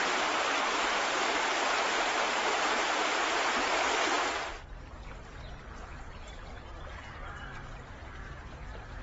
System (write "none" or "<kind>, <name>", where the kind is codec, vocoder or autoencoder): vocoder, BigVGAN v2